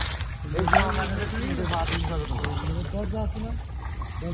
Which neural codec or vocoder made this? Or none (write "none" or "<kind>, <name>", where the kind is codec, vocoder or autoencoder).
none